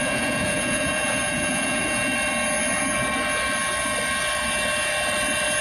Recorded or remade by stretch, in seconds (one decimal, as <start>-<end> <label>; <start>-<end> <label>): 0.0-2.1 remade; 2.1-5.6 recorded